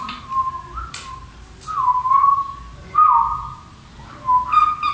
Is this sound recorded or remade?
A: recorded